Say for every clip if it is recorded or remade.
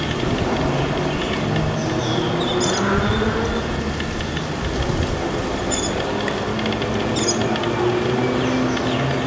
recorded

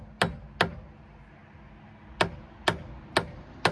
recorded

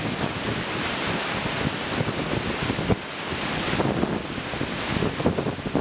recorded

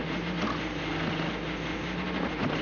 recorded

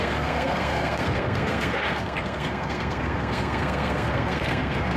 remade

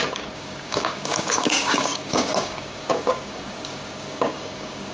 remade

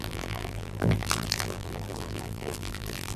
remade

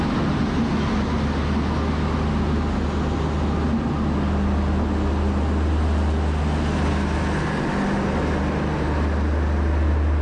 recorded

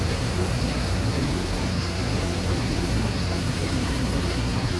remade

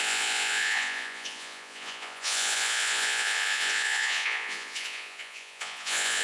remade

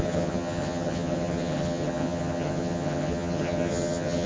remade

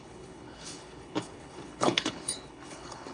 remade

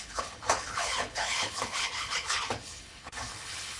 remade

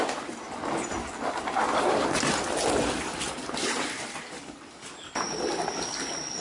recorded